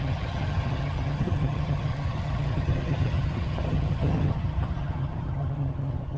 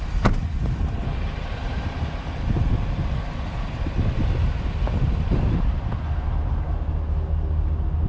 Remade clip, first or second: first